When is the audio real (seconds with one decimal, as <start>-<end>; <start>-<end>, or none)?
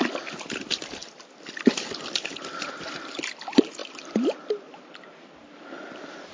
0.0-6.3